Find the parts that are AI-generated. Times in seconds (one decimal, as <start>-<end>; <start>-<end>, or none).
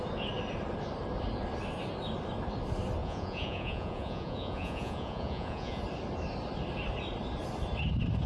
3.0-5.8